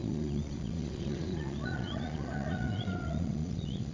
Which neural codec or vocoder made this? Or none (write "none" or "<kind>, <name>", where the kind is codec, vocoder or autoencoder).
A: vocoder, Vocos